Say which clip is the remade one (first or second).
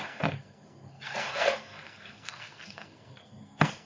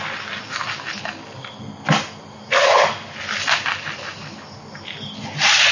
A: first